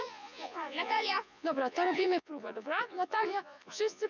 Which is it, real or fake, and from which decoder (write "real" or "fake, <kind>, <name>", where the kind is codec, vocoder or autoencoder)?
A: fake, vocoder, Vocos